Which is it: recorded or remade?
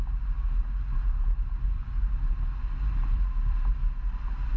recorded